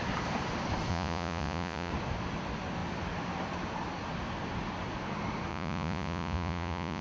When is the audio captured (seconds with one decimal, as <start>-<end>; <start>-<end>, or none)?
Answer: 0.0-0.9; 1.9-5.5